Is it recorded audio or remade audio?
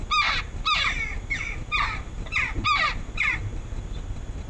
recorded